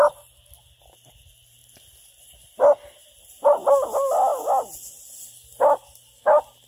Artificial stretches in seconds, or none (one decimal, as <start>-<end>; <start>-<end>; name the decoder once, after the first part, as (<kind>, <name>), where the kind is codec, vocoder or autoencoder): none